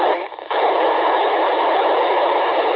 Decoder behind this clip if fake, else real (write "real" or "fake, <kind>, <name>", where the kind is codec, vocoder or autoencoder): fake, codec, HILCodec